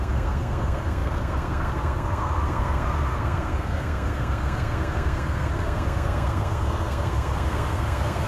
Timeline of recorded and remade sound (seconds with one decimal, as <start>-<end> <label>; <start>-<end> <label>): 0.0-8.3 remade